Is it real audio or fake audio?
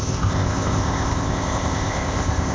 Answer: fake